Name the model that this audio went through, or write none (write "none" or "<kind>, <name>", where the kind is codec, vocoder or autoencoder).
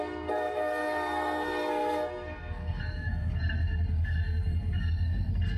codec, SNAC